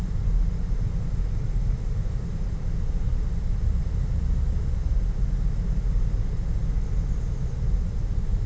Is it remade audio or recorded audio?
recorded